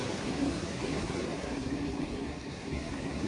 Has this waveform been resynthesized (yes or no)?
yes